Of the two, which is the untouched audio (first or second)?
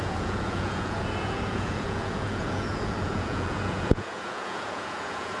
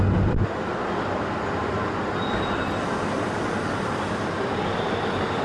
second